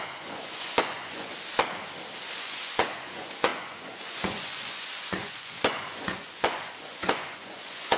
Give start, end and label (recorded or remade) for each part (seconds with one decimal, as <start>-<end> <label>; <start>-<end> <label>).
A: 0.0-1.3 remade; 1.3-2.4 recorded; 2.4-8.0 remade